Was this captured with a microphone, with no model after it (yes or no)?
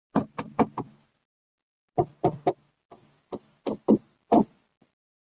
yes